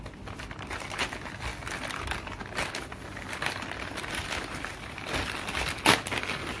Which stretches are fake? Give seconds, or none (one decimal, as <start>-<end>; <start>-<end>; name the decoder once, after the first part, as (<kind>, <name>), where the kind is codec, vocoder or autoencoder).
none